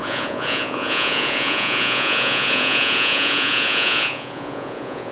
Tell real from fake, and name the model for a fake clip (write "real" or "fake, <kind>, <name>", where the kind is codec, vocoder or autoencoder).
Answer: fake, vocoder, Vocos